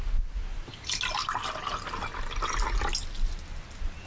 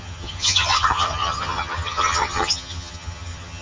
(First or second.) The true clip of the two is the first